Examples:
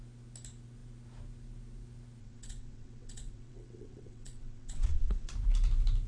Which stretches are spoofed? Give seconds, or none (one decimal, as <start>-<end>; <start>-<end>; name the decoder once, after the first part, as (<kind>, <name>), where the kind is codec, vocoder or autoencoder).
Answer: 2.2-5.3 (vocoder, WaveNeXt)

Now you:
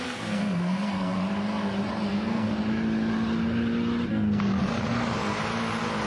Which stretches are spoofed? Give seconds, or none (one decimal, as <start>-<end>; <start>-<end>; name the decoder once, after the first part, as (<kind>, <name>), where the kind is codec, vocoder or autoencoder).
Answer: 0.0-1.2 (codec, SNAC); 2.1-2.5; 4.1-4.6

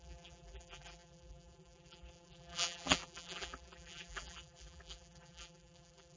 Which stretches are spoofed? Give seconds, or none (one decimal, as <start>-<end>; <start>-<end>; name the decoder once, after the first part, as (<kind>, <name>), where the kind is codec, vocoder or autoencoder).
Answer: 0.0-6.2 (vocoder, BigVGAN v2)

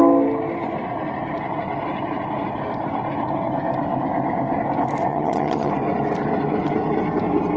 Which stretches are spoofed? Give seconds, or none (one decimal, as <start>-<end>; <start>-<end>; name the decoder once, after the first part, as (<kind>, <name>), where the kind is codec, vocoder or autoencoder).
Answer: 5.1-5.7 (vocoder, HiFi-GAN)

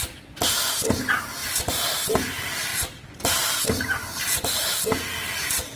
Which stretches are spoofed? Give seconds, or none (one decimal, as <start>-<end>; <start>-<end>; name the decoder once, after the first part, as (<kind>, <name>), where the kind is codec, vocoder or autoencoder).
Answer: 1.4-2.3 (vocoder, BigVGAN v2)

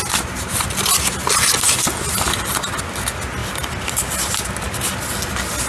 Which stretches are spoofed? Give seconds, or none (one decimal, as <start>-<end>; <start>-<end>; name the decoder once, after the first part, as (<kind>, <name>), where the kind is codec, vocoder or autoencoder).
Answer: none

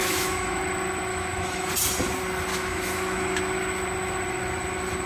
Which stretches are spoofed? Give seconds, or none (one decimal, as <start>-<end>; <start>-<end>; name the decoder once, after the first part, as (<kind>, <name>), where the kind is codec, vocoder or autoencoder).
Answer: 0.0-0.6 (autoencoder, DAC-VAE); 1.1-1.7; 2.5-3.4